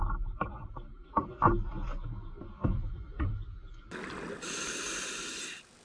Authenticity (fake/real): real